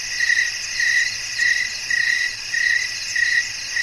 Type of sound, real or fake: real